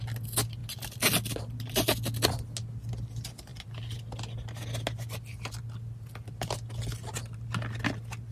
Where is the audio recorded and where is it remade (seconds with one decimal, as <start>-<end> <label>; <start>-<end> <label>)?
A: 0.0-8.3 recorded